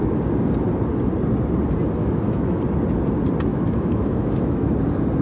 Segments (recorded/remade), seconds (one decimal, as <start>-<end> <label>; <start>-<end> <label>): 0.0-2.0 recorded; 2.0-2.6 remade; 2.6-3.5 recorded; 3.5-4.7 remade; 4.7-5.2 recorded